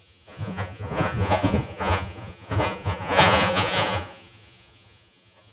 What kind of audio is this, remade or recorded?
remade